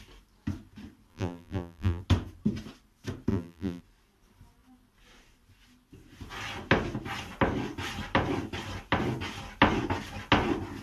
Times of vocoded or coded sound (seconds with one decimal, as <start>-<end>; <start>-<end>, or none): 1.1-2.0; 3.3-3.8